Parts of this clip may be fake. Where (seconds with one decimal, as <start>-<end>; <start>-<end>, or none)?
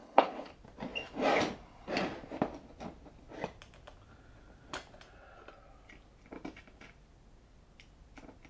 0.0-0.5